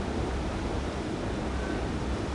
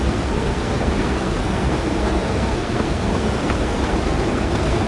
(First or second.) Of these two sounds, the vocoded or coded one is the second